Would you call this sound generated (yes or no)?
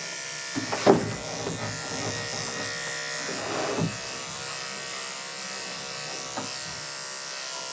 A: no